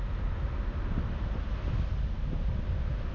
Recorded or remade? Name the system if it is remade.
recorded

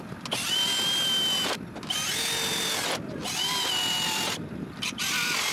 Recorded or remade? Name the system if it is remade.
recorded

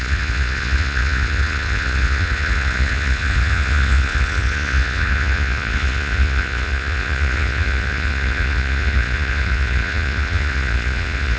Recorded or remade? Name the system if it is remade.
remade, vocoder, Vocos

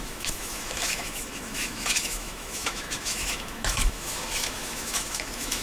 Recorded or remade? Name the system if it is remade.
remade, autoencoder, DAC-VAE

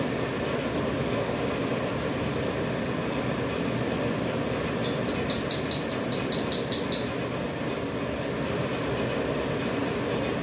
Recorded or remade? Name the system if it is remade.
recorded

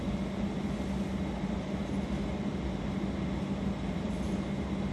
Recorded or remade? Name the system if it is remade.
recorded